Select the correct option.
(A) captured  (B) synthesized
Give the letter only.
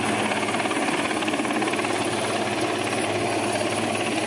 A